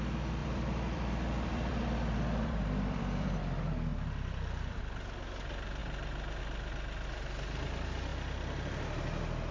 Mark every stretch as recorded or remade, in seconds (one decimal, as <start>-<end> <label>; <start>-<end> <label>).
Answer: 0.0-0.4 recorded; 0.4-3.4 remade; 3.4-3.9 recorded; 3.9-4.8 remade; 4.8-9.5 recorded